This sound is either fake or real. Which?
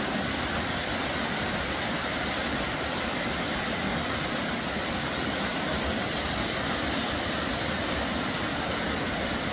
real